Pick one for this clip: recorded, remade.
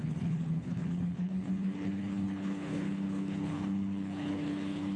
remade